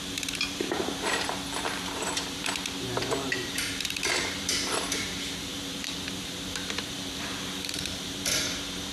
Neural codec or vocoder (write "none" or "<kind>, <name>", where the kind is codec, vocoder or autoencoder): vocoder, BigVGAN v2